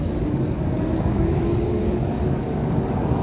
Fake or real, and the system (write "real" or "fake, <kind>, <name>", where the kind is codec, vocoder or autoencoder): fake, codec, DAC